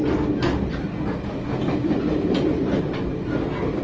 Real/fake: real